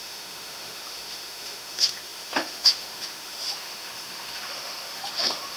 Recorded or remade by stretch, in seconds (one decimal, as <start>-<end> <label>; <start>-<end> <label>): 0.0-5.6 remade